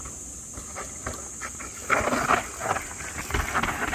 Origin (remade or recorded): recorded